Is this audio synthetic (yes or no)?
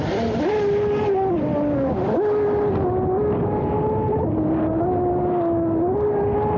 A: no